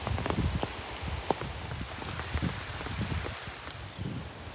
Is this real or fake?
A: real